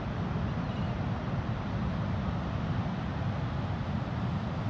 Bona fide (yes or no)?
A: yes